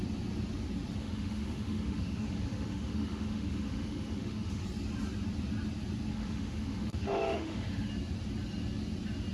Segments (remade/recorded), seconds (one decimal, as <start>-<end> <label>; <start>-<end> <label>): 0.0-1.0 recorded; 1.0-4.6 remade; 4.6-6.1 recorded; 6.1-7.9 remade; 7.9-9.3 recorded